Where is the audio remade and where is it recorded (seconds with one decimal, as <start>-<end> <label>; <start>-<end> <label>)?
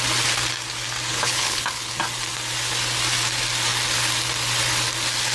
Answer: 0.0-1.1 recorded; 1.1-1.9 remade; 1.9-5.3 recorded